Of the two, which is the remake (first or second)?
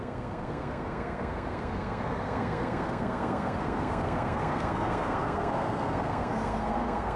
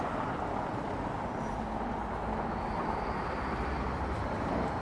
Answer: first